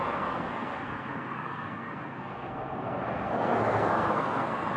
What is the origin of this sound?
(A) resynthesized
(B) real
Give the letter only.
A